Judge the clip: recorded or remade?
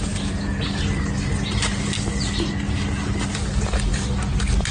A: recorded